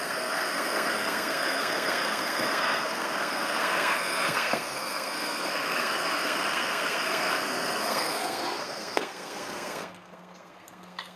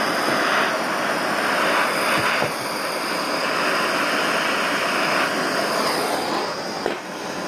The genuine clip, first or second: second